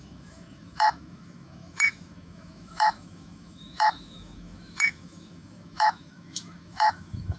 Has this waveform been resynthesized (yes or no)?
yes